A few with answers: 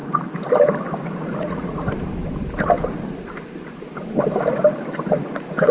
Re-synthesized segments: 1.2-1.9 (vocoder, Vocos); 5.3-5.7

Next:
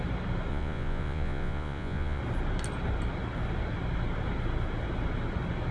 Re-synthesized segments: 0.5-2.2 (vocoder, Vocos)